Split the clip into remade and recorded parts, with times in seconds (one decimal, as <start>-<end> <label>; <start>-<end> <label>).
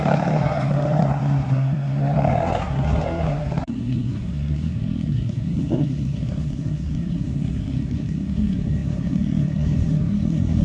0.0-10.6 remade